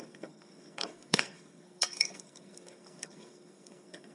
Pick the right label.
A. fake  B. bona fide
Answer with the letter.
A